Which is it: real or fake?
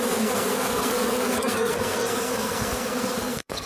fake